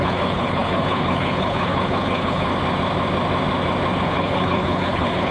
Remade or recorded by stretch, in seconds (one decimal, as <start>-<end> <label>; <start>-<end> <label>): 0.0-2.5 remade; 2.5-4.0 recorded; 4.0-5.3 remade